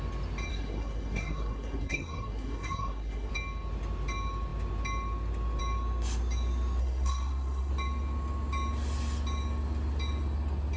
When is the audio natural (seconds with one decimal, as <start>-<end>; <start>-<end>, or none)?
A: 0.0-0.5; 3.3-6.8; 7.7-10.8